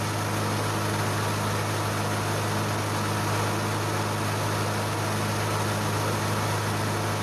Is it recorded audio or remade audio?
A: recorded